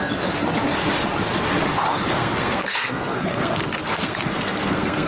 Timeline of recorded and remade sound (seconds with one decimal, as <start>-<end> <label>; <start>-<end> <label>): 0.0-2.1 recorded; 2.1-5.1 remade